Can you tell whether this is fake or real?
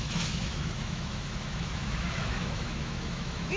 fake